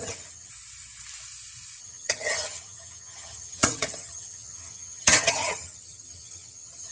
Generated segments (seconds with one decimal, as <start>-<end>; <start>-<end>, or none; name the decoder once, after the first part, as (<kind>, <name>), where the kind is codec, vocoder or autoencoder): 0.0-0.5 (vocoder, HiFi-GAN); 1.8-6.9

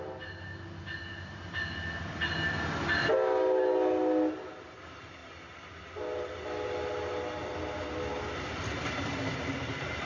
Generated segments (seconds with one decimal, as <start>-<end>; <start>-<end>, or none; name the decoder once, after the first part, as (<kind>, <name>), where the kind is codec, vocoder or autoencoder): none